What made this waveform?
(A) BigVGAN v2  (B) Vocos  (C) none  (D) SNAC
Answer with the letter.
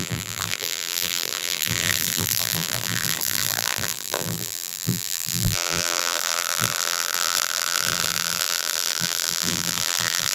A